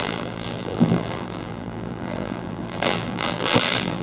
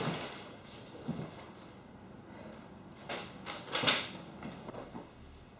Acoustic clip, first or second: second